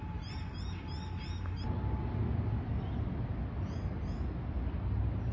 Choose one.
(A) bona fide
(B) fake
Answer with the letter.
A